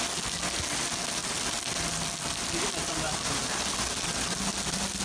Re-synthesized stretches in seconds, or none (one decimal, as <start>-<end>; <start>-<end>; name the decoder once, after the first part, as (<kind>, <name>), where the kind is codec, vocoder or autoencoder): none